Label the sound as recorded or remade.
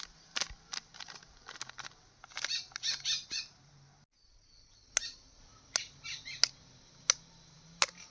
recorded